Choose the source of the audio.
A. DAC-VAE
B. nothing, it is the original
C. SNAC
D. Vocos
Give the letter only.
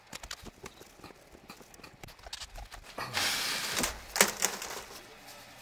B